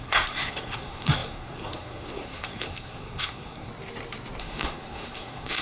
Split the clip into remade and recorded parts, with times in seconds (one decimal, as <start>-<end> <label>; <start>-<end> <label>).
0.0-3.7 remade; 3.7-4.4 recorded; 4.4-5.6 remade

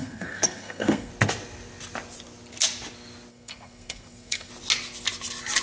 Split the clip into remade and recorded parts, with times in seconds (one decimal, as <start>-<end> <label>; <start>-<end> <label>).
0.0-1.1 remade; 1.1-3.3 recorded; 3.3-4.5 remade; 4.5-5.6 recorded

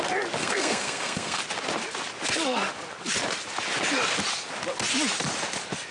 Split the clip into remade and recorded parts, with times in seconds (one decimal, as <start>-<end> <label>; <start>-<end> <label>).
0.0-0.4 recorded; 0.4-1.4 remade; 1.4-5.9 recorded

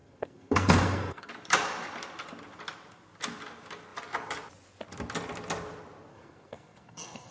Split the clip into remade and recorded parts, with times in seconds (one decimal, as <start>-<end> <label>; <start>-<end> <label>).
0.0-1.3 remade; 1.3-6.1 recorded; 6.1-7.3 remade

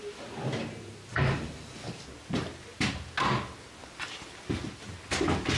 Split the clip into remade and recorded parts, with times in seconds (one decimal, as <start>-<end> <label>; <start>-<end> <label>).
0.0-5.6 recorded